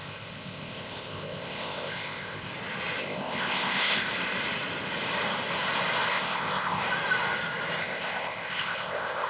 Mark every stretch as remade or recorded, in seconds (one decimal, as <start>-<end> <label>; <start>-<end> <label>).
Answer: 0.0-2.5 remade; 2.5-3.0 recorded; 3.0-4.1 remade; 4.1-6.1 recorded; 6.1-6.8 remade; 6.8-7.8 recorded; 7.8-9.3 remade